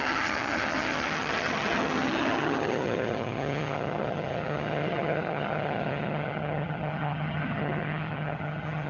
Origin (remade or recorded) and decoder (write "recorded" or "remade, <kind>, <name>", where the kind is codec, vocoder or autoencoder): remade, vocoder, HiFi-GAN